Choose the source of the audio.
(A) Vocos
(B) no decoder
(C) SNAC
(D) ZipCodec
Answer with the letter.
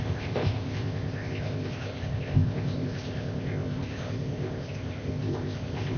D